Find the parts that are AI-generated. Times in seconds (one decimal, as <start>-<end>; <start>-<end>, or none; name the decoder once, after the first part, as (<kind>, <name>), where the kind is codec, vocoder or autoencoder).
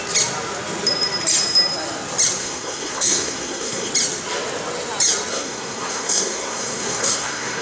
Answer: 2.4-3.9 (codec, SNAC); 5.3-7.6